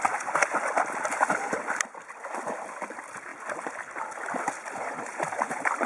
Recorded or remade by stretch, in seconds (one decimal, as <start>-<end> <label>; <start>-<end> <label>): 0.0-5.9 recorded